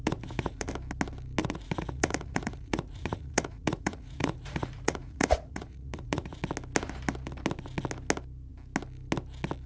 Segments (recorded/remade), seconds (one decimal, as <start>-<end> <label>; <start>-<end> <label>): 0.0-0.7 remade; 0.7-1.4 recorded; 1.4-6.4 remade; 6.4-9.7 recorded